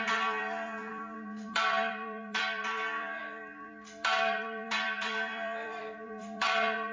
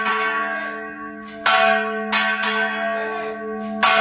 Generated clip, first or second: first